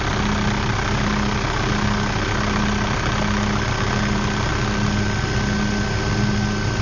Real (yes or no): yes